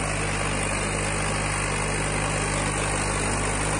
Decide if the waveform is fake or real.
real